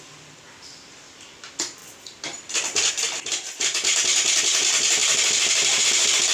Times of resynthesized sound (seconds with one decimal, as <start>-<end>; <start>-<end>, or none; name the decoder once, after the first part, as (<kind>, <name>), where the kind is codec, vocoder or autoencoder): 5.0-5.8 (vocoder, BigVGAN v2)